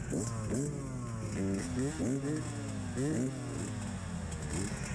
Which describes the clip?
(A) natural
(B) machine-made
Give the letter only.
A